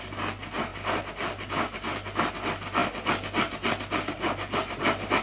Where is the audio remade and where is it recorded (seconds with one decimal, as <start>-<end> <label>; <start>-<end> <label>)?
0.0-5.2 recorded